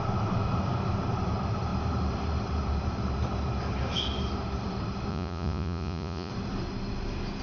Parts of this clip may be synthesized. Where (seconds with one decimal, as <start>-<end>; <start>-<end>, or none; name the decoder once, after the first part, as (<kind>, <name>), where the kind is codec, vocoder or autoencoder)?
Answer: 5.1-6.3 (vocoder, Vocos)